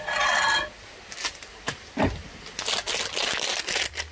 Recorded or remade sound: recorded